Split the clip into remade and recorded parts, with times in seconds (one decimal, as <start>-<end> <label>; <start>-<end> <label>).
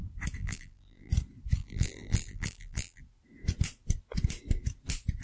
0.0-0.4 recorded; 0.4-1.1 remade; 1.1-1.6 recorded; 1.6-3.0 remade; 3.0-5.2 recorded